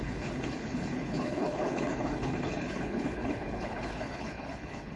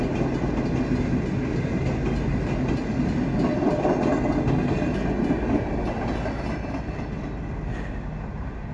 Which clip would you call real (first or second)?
second